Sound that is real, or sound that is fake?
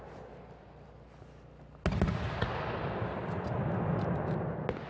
real